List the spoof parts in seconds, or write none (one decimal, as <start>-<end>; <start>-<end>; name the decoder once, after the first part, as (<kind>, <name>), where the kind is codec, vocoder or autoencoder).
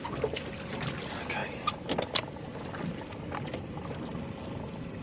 none